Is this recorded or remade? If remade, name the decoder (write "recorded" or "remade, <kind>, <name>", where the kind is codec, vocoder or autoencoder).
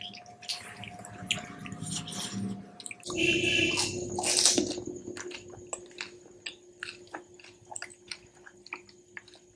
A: recorded